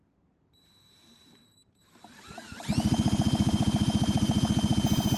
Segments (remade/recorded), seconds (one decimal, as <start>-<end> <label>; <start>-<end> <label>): 0.0-5.2 remade